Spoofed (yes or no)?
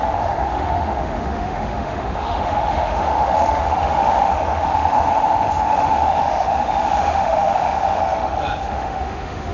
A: yes